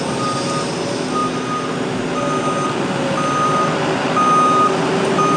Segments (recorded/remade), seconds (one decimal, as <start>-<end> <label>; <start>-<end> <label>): 0.0-5.4 recorded